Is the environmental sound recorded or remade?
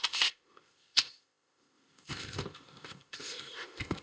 remade